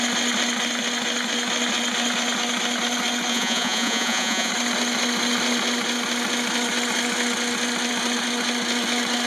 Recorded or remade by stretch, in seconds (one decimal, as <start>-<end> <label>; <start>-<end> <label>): 0.0-3.3 recorded; 3.3-4.5 remade; 4.5-9.3 recorded